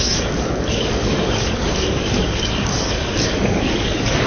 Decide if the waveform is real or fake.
fake